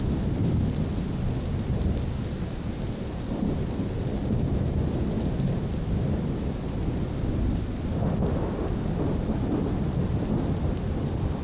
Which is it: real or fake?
real